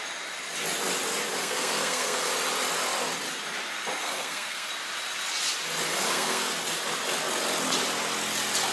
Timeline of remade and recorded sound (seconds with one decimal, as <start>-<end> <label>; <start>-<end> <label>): 0.0-1.4 recorded; 1.4-2.3 remade; 2.3-4.0 recorded; 4.0-4.7 remade; 4.7-5.9 recorded; 5.9-6.5 remade; 6.5-8.7 recorded